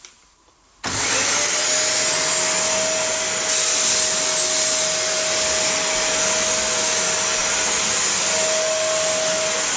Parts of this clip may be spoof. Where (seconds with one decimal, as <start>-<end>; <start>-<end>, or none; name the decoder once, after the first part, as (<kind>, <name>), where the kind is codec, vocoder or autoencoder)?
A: none